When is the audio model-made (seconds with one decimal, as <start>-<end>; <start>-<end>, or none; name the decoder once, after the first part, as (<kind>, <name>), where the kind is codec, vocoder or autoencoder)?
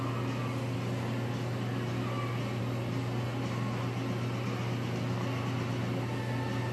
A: none